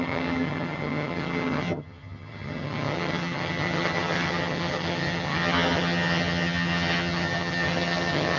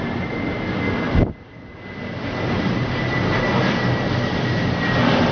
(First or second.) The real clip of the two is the second